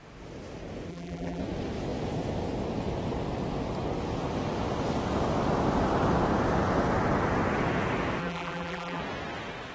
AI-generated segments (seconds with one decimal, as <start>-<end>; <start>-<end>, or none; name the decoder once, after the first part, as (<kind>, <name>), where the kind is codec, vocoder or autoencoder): 0.9-1.4 (vocoder, BigVGAN v2); 8.2-9.0

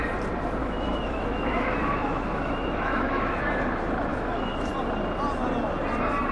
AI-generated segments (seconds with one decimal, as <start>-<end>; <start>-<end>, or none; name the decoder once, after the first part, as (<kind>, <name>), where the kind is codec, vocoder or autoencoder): 0.6-3.4 (autoencoder, DAC-VAE); 4.1-4.7

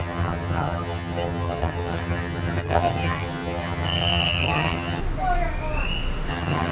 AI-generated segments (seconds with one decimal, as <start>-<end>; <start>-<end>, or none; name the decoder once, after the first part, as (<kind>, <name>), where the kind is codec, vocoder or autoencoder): 0.0-5.0 (vocoder, HiFi-GAN); 6.3-6.7

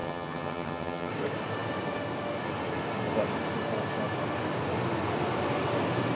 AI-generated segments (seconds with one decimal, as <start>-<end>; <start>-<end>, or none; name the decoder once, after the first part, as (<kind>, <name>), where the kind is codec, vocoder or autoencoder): 0.0-1.1 (vocoder, HiFi-GAN)

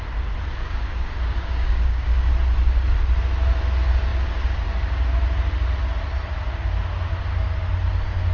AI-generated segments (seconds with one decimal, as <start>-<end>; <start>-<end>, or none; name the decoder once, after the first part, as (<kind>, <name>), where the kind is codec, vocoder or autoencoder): 0.6-2.3 (codec, DAC)

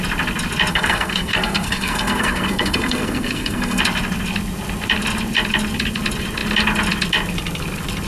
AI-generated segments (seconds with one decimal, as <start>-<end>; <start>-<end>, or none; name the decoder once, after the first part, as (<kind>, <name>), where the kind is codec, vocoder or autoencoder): 0.7-3.8 (codec, SNAC)

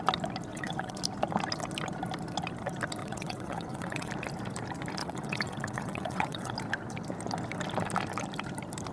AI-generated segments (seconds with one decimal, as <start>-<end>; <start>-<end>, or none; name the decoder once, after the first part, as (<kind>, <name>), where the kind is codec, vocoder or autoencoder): 0.5-1.0 (vocoder, WaveNeXt); 3.0-4.1; 5.0-6.5

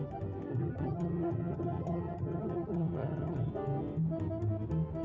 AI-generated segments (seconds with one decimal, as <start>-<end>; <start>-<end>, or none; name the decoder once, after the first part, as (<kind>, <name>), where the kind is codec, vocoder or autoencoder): 0.5-3.5 (vocoder, HiFi-GAN)